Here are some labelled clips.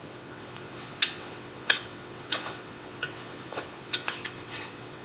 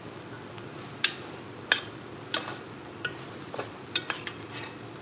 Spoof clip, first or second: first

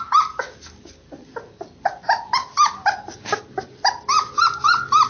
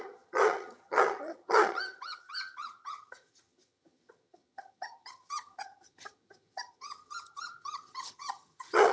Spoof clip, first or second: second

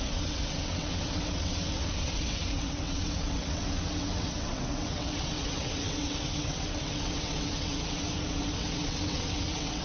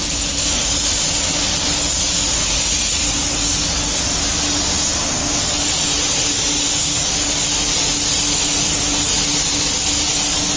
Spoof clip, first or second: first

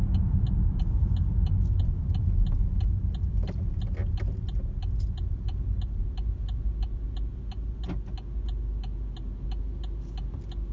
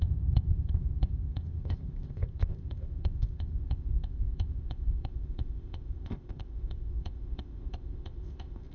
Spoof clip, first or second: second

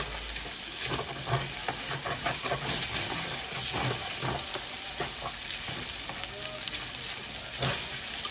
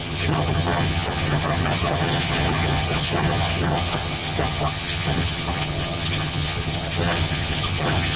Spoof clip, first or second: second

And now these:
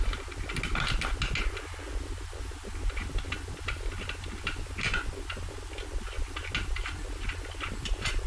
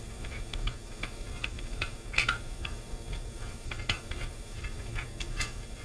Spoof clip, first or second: second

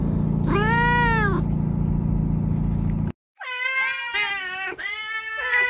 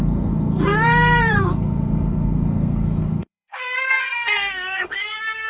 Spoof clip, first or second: second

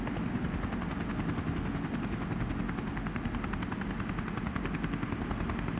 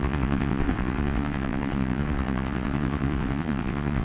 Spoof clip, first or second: second